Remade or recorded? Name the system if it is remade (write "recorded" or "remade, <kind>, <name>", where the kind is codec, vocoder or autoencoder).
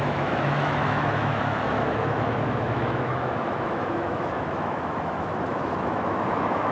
remade, autoencoder, DAC-VAE